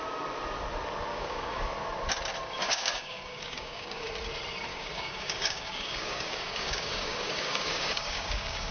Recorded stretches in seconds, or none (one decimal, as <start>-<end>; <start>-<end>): 0.0-1.1; 1.6-2.6; 4.1-4.7